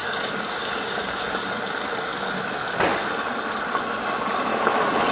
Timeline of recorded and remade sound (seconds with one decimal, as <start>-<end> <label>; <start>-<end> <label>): 0.0-1.6 remade; 1.6-5.1 recorded